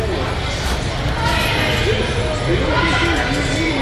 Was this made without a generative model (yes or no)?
yes